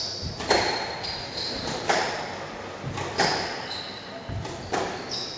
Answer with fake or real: real